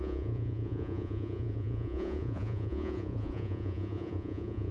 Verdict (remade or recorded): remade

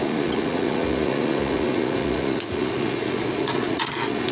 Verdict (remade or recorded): remade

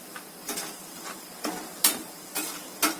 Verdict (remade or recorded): recorded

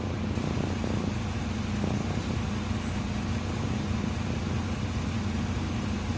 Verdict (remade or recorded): recorded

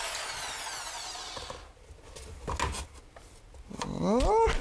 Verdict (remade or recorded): recorded